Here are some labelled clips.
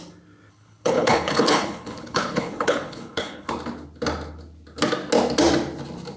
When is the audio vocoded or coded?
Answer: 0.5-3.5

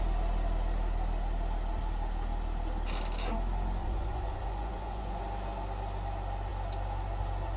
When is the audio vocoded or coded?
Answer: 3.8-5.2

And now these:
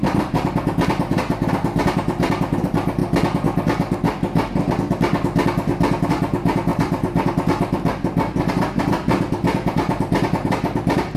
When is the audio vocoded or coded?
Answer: 0.0-3.0; 6.1-11.2